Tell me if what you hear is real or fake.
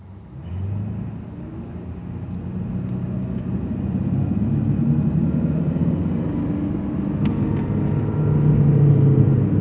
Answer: real